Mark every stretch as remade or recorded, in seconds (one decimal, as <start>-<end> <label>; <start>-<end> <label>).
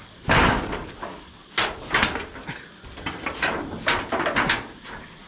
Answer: 0.0-1.3 remade; 1.3-5.3 recorded